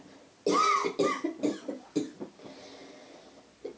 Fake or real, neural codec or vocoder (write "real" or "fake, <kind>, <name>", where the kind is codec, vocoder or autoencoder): real